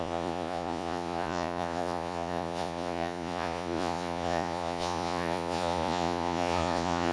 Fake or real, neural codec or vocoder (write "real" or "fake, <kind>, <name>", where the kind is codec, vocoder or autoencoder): fake, vocoder, Vocos